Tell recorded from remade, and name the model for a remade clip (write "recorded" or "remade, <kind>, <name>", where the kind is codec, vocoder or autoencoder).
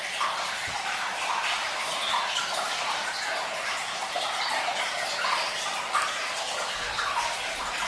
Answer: recorded